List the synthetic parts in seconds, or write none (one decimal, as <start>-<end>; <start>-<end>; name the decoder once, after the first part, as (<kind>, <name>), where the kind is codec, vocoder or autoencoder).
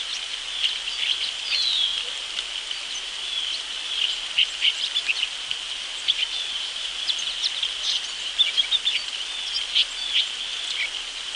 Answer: none